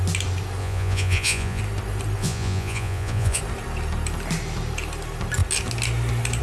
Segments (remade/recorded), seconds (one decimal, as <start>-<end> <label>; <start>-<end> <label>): 0.0-0.6 recorded; 0.6-1.6 remade; 1.6-2.2 recorded; 2.2-3.4 remade; 3.4-6.4 recorded